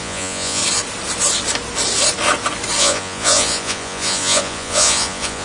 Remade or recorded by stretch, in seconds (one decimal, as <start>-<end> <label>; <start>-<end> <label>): 0.0-0.6 remade; 0.6-2.8 recorded; 2.8-5.4 remade